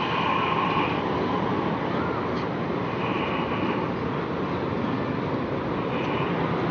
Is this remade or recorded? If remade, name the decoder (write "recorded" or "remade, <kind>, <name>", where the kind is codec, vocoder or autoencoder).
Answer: recorded